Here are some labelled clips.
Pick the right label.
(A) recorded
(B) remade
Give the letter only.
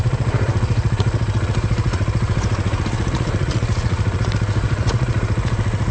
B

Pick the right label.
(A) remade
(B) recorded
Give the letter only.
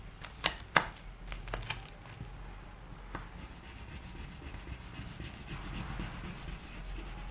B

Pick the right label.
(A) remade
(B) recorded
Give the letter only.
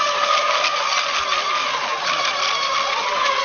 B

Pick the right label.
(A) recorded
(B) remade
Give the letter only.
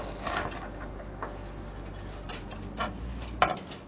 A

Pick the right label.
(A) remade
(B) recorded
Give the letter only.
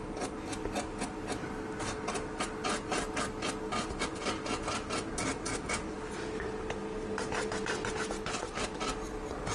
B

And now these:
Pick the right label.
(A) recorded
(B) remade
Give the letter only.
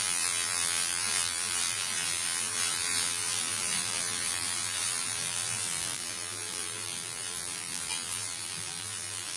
B